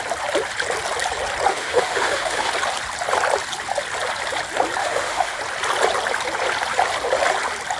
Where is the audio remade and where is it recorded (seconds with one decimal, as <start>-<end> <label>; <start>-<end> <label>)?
0.0-1.5 recorded; 1.5-2.5 remade; 2.5-4.8 recorded; 4.8-5.4 remade; 5.4-7.8 recorded